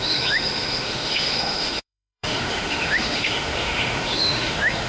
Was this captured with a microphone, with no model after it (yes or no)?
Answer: no